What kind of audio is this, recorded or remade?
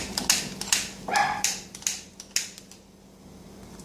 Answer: recorded